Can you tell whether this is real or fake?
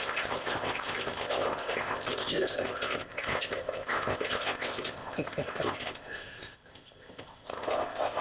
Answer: fake